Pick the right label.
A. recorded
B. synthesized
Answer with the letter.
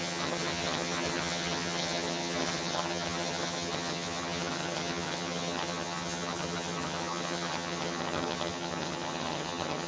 B